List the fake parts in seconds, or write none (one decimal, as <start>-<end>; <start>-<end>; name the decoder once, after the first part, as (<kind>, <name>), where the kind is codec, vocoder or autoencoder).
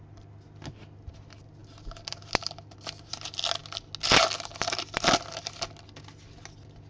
none